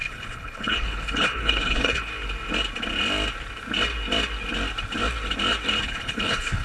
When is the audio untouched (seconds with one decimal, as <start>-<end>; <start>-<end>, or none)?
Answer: 2.1-5.8